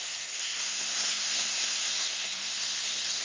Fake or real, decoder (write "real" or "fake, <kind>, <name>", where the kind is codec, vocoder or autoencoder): fake, codec, SNAC